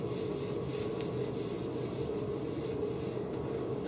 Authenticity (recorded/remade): recorded